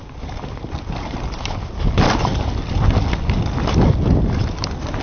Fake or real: real